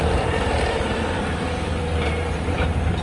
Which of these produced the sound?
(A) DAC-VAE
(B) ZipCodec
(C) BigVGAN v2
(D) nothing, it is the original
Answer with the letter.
C